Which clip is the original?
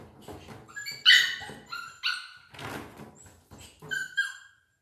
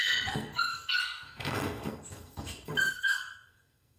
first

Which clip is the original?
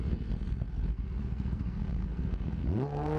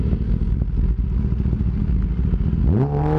second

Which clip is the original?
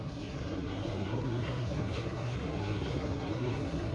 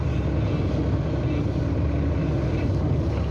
second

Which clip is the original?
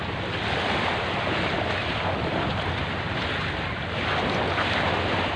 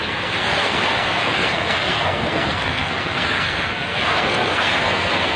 first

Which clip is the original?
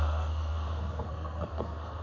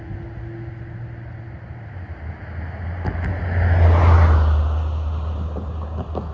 second